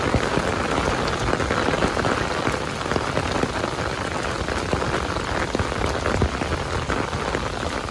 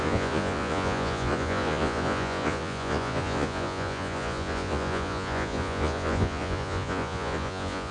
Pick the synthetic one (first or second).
second